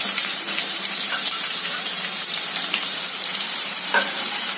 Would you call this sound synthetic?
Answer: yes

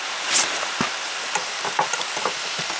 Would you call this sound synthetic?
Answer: yes